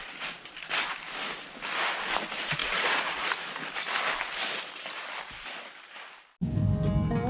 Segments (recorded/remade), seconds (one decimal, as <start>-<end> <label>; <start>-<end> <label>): 0.0-2.6 recorded; 2.6-3.3 remade; 3.3-7.3 recorded